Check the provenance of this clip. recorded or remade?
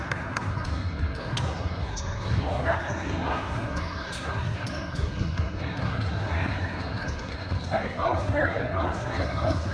remade